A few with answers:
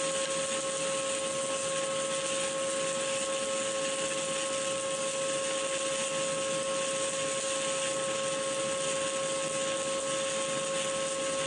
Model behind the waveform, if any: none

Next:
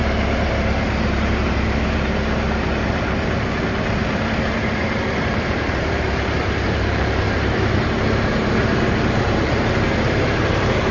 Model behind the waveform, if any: vocoder, BigVGAN v2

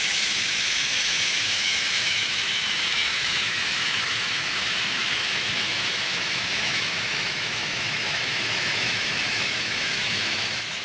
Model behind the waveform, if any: autoencoder, DAC-VAE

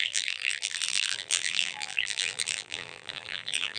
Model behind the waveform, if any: vocoder, BigVGAN v2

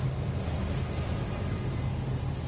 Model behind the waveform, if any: none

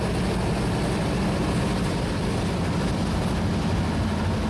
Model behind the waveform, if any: none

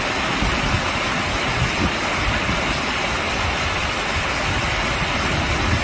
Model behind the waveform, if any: none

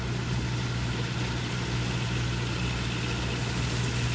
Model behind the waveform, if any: none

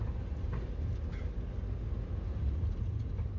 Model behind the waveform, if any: none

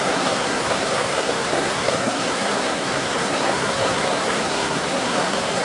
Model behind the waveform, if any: codec, SNAC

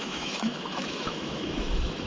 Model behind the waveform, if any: autoencoder, DAC-VAE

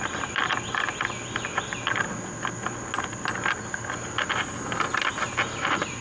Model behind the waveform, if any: none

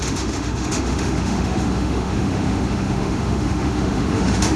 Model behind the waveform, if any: autoencoder, DAC-VAE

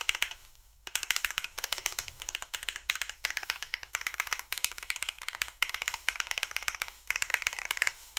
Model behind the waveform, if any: codec, DAC